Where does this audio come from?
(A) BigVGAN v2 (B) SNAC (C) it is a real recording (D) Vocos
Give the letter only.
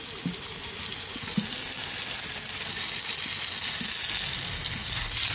C